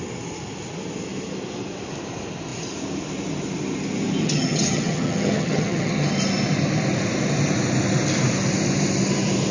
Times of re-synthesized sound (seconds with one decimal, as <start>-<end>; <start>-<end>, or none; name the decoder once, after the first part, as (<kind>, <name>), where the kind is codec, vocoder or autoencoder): 4.2-6.1 (vocoder, HiFi-GAN)